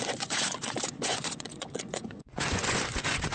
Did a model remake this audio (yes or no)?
yes